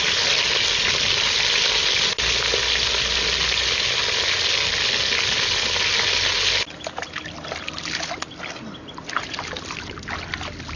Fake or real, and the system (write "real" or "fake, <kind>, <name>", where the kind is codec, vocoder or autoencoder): real